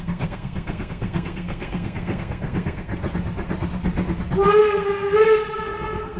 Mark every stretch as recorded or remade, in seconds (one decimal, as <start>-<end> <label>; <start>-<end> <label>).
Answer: 0.0-2.9 remade; 2.9-4.6 recorded; 4.6-6.2 remade